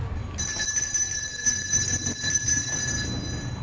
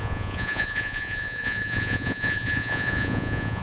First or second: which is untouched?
first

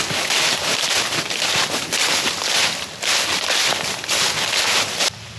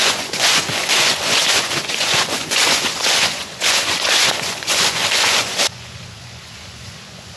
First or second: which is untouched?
first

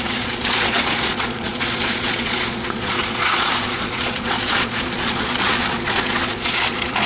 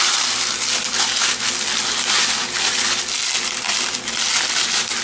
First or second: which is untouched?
second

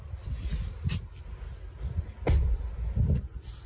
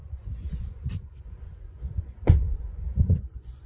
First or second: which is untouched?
first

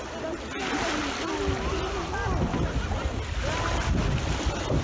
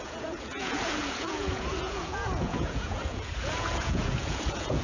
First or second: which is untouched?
first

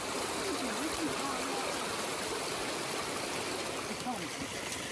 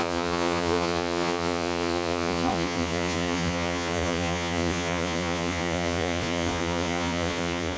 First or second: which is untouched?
first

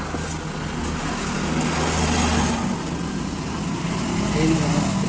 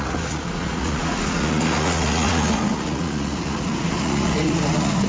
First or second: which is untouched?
first